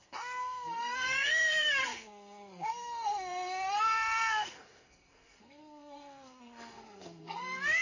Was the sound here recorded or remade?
remade